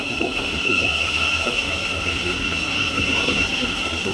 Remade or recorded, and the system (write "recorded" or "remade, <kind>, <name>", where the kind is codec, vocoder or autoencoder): remade, codec, SNAC